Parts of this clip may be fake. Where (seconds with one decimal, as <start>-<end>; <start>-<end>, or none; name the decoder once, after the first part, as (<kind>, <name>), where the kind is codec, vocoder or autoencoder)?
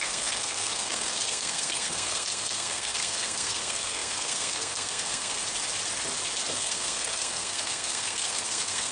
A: 0.0-5.4 (codec, SNAC); 6.5-8.9